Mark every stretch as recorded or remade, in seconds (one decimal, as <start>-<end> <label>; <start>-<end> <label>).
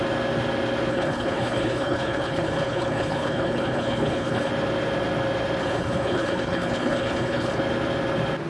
0.0-0.9 recorded; 0.9-4.5 remade; 4.5-5.6 recorded; 5.6-7.6 remade; 7.6-8.5 recorded